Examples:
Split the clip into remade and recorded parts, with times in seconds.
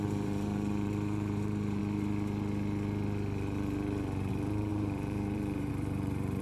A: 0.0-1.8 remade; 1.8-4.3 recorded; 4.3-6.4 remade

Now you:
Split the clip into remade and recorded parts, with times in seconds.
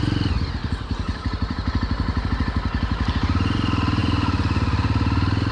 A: 0.0-0.6 recorded; 0.6-2.3 remade; 2.3-5.5 recorded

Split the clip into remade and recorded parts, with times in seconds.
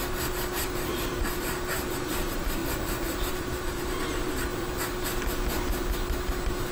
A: 0.0-2.6 remade; 2.6-3.3 recorded; 3.3-4.5 remade; 4.5-6.7 recorded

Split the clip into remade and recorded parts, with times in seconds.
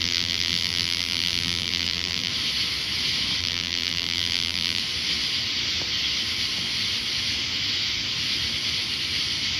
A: 0.0-2.3 remade; 2.3-3.4 recorded; 3.4-4.8 remade; 4.8-9.6 recorded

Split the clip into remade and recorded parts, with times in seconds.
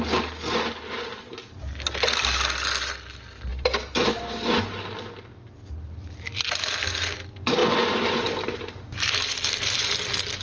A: 0.0-3.5 recorded; 3.5-4.2 remade; 4.2-10.4 recorded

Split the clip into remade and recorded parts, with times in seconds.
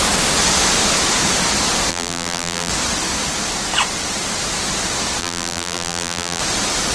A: 0.0-1.9 recorded; 1.9-2.7 remade; 2.7-5.2 recorded; 5.2-6.4 remade; 6.4-6.9 recorded